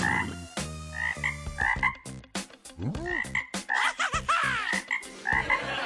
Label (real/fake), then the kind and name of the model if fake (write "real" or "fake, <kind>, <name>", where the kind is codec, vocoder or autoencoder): real